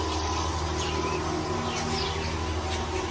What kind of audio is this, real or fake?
real